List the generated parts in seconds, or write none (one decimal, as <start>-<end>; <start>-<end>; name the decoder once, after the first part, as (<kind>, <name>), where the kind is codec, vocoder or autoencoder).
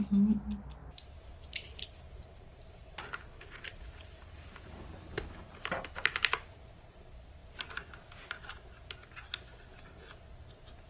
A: 0.8-5.8 (vocoder, BigVGAN v2)